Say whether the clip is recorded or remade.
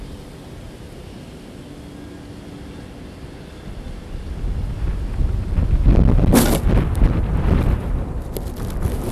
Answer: recorded